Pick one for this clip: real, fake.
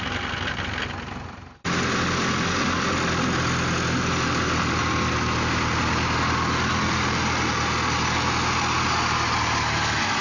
real